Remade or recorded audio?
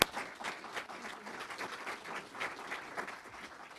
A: recorded